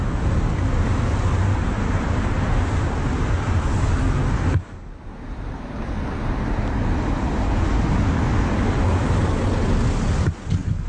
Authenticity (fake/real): real